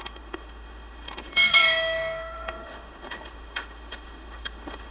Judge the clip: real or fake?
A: fake